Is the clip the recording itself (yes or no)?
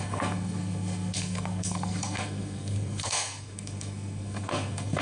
no